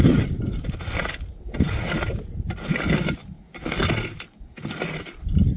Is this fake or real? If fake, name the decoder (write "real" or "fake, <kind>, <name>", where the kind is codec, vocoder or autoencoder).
real